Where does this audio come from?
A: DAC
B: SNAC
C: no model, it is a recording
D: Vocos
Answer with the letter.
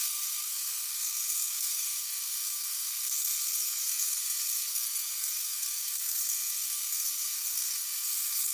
B